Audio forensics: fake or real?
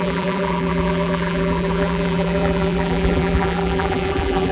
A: fake